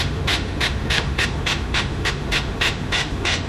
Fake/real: fake